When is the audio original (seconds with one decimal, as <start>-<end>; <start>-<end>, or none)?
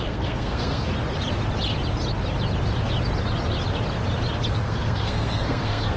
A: 0.9-4.5